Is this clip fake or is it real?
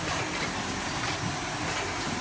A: real